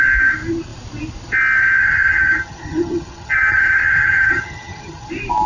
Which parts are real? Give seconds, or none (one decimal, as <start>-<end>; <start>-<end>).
0.0-1.8; 5.1-5.5